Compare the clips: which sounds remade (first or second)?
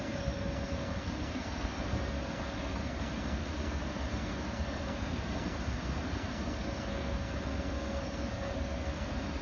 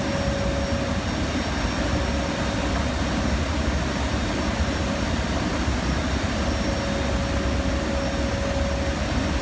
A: first